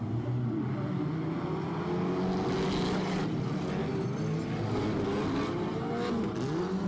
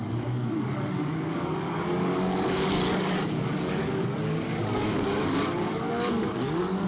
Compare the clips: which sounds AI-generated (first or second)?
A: second